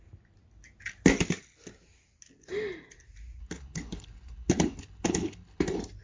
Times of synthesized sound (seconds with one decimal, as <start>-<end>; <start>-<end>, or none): 3.4-5.6